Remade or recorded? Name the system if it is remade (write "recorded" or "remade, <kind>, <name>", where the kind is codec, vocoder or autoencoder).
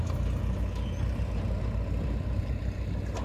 recorded